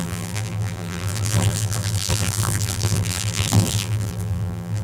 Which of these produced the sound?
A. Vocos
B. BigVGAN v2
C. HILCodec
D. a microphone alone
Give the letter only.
B